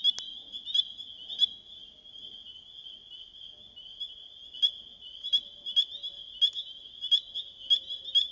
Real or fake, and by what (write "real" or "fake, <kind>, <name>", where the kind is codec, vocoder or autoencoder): real